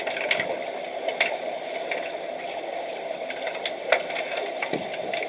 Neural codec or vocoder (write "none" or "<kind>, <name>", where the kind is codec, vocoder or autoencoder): none